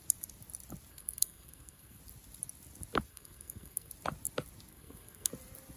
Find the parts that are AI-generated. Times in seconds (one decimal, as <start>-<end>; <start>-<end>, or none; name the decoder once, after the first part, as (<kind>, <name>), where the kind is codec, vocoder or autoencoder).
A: 0.9-2.0 (codec, SNAC); 3.1-3.9; 4.7-5.3